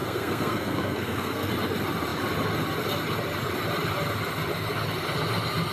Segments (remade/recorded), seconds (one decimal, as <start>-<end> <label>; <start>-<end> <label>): 0.0-1.5 remade; 1.5-5.7 recorded